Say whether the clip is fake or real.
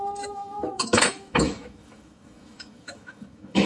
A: fake